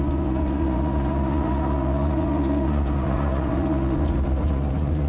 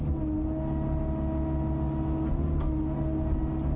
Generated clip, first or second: first